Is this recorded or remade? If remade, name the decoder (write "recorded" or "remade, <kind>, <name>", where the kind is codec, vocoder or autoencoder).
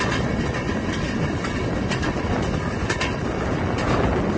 recorded